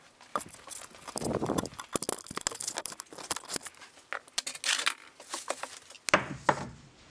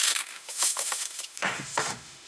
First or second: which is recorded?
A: first